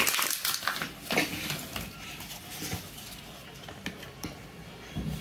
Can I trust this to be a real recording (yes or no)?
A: yes